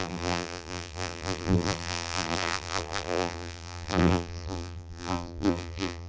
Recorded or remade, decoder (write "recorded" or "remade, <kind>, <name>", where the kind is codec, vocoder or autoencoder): remade, vocoder, BigVGAN v2